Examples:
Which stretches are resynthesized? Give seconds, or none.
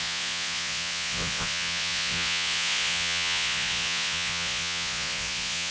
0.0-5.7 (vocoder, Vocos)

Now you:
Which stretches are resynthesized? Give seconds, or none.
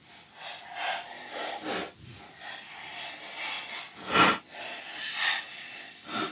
none